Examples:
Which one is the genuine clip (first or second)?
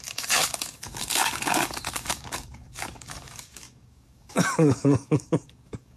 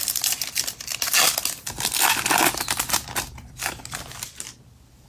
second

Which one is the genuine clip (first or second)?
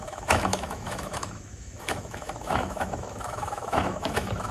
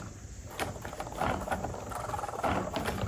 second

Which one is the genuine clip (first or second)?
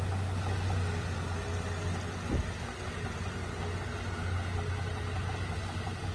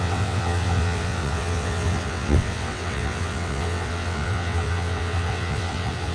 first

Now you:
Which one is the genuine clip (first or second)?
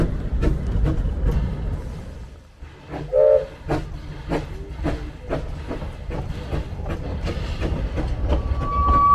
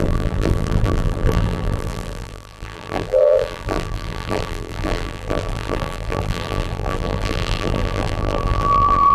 first